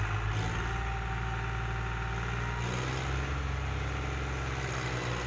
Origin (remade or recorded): recorded